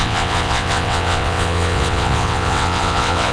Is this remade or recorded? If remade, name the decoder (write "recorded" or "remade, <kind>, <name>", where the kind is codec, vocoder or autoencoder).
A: remade, vocoder, WaveNeXt